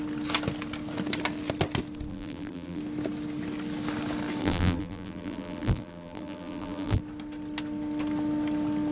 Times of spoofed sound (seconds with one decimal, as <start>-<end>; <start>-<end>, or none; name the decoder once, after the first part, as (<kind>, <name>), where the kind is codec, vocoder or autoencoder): 2.1-2.8 (vocoder, BigVGAN v2); 4.4-7.0